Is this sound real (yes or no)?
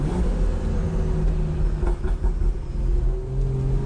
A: yes